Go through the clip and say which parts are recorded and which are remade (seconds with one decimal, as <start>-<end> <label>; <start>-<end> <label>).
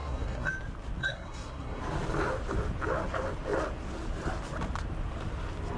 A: 0.0-0.5 remade; 0.5-1.0 recorded; 1.0-1.8 remade; 1.8-5.8 recorded